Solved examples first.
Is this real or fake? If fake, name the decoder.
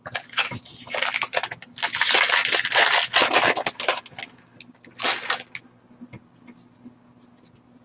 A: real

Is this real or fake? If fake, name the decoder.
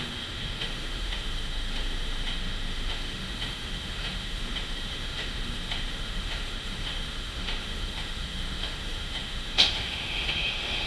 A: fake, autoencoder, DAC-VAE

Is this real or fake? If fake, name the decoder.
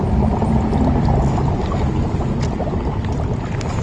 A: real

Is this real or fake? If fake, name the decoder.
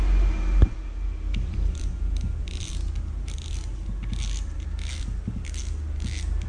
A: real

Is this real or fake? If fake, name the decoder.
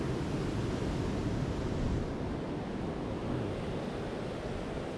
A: real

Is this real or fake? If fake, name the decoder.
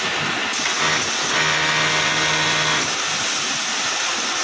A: real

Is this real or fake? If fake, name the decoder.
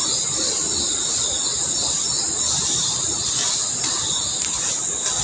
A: real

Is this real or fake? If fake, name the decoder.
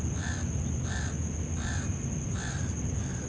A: real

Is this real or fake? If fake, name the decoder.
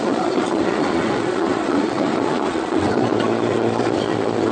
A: fake, vocoder, Vocos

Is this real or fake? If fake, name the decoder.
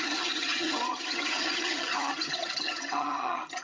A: fake, vocoder, HiFi-GAN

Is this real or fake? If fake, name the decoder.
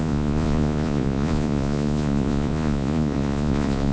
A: fake, vocoder, Vocos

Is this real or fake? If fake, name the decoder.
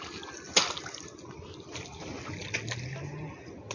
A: real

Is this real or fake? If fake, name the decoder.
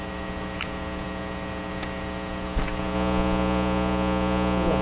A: fake, vocoder, Vocos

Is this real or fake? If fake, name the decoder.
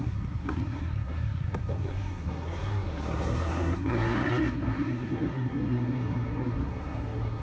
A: fake, codec, SNAC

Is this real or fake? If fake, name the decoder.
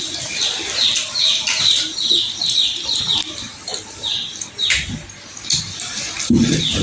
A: fake, vocoder, BigVGAN v2